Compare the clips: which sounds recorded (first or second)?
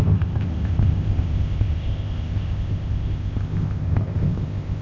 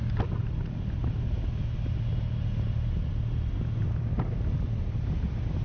second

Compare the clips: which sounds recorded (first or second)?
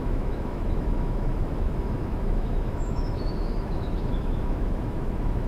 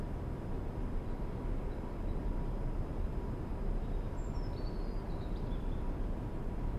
second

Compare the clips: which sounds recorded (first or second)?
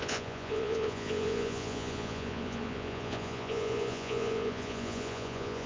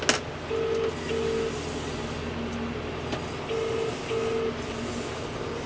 second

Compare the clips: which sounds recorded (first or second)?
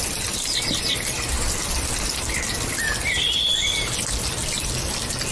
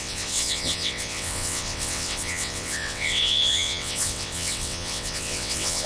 first